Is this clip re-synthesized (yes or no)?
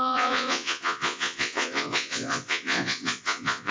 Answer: yes